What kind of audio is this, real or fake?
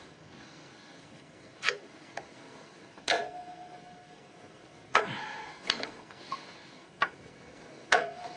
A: fake